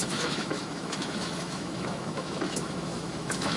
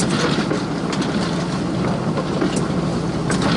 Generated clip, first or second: first